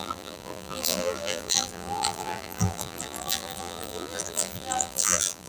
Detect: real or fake fake